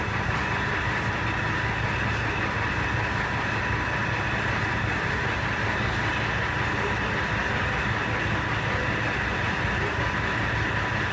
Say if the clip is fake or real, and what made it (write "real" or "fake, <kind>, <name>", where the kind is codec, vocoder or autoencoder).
real